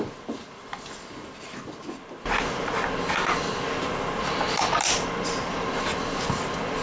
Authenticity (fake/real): real